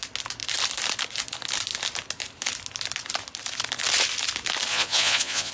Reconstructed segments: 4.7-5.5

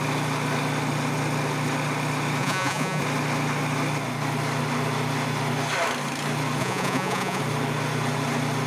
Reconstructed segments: 2.4-3.0; 6.6-7.4

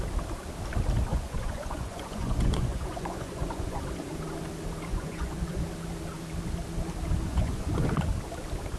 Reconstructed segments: 1.1-3.8; 4.9-5.6; 7.3-8.0